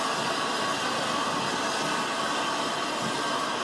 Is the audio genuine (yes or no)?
yes